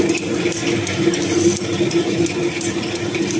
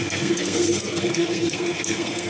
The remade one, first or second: second